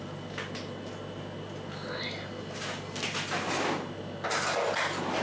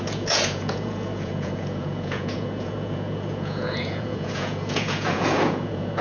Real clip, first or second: first